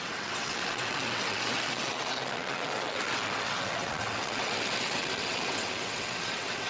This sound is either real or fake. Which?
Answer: fake